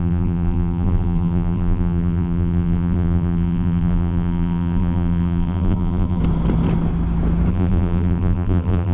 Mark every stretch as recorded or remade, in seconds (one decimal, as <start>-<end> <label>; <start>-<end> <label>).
0.0-6.2 remade; 6.2-7.5 recorded; 7.5-8.9 remade